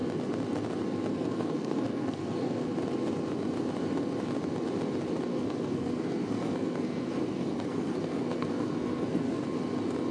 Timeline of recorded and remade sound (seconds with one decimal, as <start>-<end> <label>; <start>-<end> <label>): 0.0-1.1 recorded; 1.1-2.7 remade; 2.7-5.3 recorded; 5.3-9.4 remade; 9.4-10.1 recorded